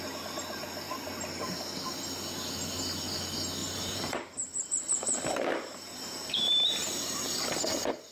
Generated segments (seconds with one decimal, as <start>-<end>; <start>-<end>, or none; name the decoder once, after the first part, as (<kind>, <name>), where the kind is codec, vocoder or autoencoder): 3.6-8.1 (vocoder, BigVGAN v2)